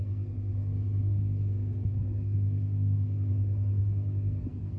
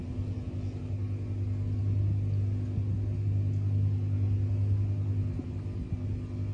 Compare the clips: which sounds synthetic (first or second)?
first